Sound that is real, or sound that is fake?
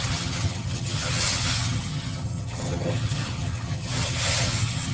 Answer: fake